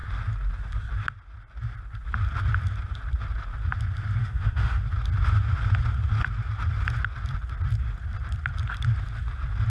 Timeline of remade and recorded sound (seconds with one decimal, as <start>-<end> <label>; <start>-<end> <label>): 0.0-4.2 recorded; 4.2-4.8 remade; 4.8-9.7 recorded